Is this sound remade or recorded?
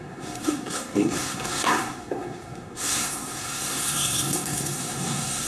remade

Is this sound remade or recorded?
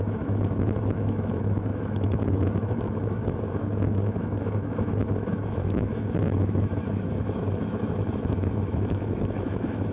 remade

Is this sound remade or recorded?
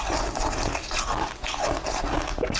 recorded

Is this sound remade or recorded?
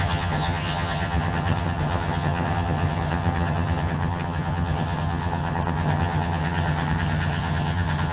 remade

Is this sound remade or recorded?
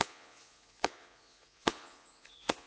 remade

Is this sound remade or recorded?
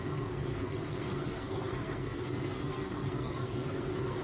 remade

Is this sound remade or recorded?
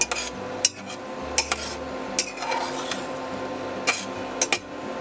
recorded